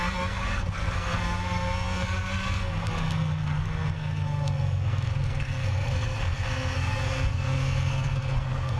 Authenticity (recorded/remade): remade